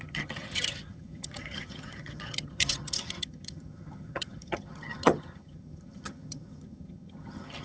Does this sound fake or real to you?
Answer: fake